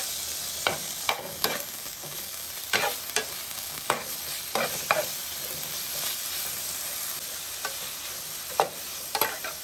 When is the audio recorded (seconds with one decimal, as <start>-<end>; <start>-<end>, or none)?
0.0-0.8; 2.5-3.5; 4.2-9.6